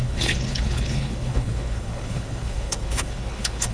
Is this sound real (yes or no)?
no